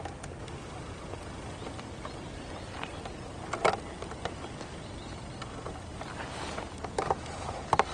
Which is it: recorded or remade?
recorded